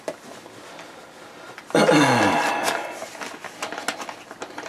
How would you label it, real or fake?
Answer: real